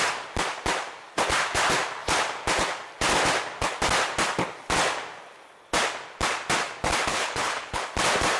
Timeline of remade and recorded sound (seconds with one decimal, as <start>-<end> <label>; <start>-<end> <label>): 0.0-7.1 recorded; 7.1-7.8 remade; 7.8-8.4 recorded